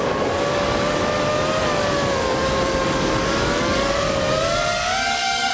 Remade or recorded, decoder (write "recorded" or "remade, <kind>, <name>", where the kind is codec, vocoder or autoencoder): remade, codec, DAC